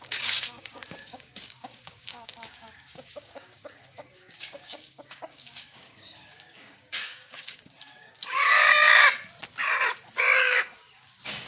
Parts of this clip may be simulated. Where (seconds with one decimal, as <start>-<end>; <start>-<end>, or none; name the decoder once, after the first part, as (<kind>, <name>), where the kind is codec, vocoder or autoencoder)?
0.0-8.7 (codec, DAC); 10.4-11.5